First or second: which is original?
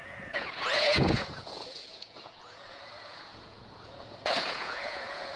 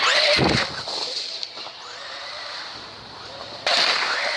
second